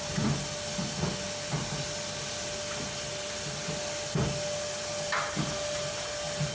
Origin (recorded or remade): recorded